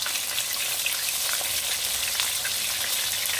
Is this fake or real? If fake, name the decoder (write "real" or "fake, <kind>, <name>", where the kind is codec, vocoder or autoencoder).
real